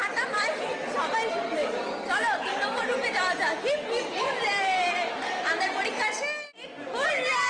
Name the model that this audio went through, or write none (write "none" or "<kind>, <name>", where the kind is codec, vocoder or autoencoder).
none